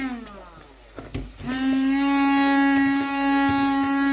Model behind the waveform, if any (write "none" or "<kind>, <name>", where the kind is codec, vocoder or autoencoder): none